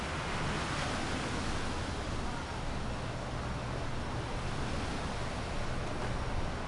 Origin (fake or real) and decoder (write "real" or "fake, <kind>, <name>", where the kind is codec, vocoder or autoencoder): real